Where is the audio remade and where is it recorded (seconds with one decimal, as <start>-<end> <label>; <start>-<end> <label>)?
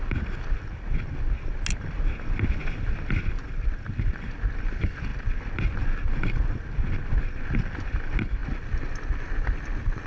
0.0-10.1 recorded